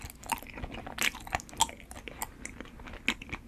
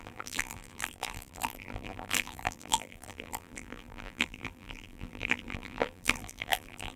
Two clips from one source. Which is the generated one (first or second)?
second